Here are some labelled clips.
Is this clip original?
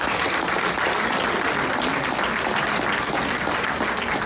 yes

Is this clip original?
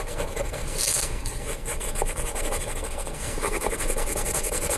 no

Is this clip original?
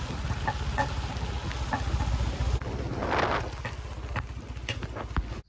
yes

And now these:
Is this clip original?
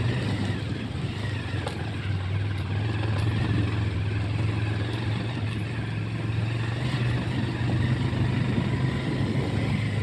yes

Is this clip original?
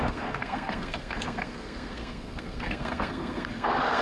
no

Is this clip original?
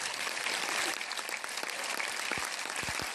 yes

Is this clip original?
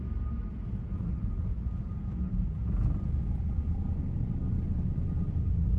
yes